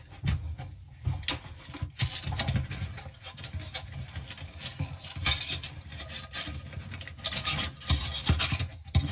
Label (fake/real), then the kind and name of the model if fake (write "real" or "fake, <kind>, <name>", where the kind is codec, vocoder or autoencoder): real